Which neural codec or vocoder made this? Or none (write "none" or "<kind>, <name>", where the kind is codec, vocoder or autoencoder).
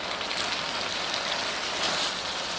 none